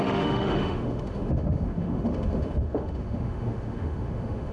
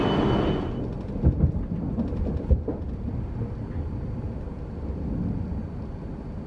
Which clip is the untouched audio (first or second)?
second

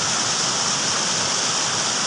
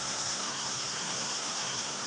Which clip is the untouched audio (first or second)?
first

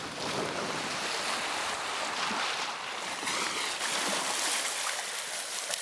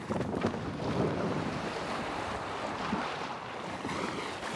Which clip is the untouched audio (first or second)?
first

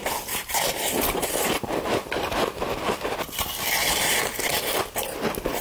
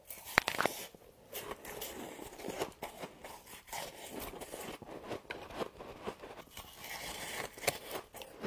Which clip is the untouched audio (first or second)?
second